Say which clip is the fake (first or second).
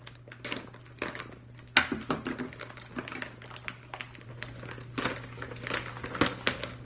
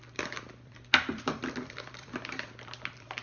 second